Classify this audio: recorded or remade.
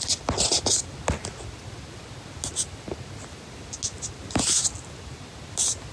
recorded